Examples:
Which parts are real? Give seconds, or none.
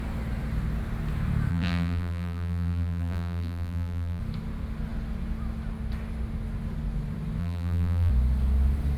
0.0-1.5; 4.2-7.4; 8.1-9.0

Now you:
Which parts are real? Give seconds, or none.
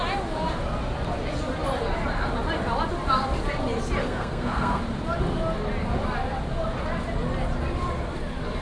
0.0-4.0; 4.8-8.6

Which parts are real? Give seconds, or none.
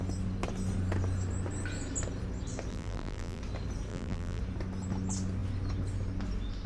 0.0-2.7; 3.4-3.9; 4.4-6.7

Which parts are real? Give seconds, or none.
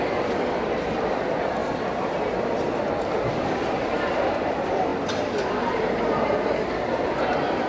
1.6-3.3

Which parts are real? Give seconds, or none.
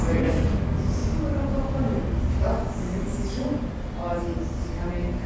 0.0-5.3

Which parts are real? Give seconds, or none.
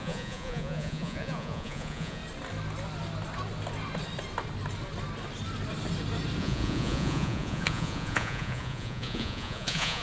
2.2-6.4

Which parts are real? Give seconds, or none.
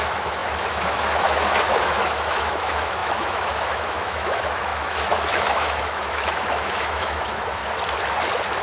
7.6-8.6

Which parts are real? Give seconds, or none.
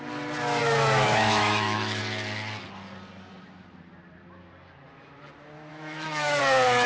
0.0-0.6; 2.0-5.7; 6.4-6.9